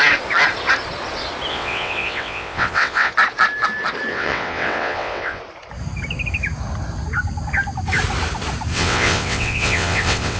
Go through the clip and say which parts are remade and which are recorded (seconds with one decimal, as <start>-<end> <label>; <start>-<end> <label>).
0.0-1.5 recorded; 1.5-3.1 remade; 3.1-4.1 recorded; 4.1-5.4 remade; 5.4-8.7 recorded; 8.7-10.4 remade

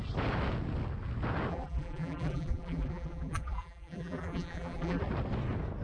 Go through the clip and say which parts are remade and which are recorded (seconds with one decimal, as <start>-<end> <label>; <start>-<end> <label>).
0.0-1.5 recorded; 1.5-5.0 remade; 5.0-5.8 recorded

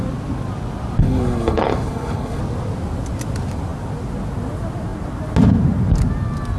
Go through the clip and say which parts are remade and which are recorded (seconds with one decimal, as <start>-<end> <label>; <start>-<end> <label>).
0.0-1.0 recorded; 1.0-2.4 remade; 2.4-6.6 recorded

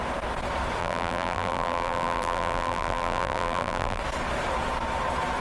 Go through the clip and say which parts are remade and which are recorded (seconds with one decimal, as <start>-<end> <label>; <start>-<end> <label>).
0.0-0.8 recorded; 0.8-4.0 remade; 4.0-5.4 recorded

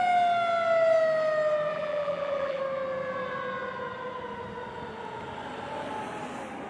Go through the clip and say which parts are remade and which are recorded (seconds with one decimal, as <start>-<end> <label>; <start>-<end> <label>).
0.0-1.7 recorded; 1.7-2.6 remade; 2.6-6.7 recorded

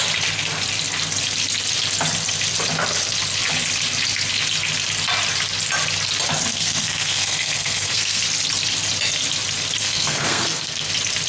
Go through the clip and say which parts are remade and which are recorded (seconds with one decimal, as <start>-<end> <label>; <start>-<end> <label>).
0.0-6.5 recorded; 6.5-8.2 remade; 8.2-9.8 recorded; 9.8-10.9 remade; 10.9-11.3 recorded

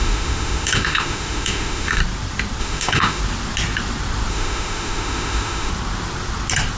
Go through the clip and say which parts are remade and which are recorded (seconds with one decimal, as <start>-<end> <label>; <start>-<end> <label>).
0.0-2.0 remade; 2.0-2.6 recorded; 2.6-3.2 remade; 3.2-4.3 recorded; 4.3-5.7 remade; 5.7-6.8 recorded

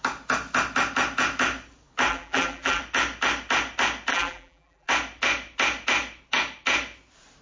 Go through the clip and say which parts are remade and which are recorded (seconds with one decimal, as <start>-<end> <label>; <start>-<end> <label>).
0.0-2.1 recorded; 2.1-2.8 remade; 2.8-4.1 recorded; 4.1-4.9 remade; 4.9-7.4 recorded